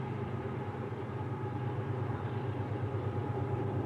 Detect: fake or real fake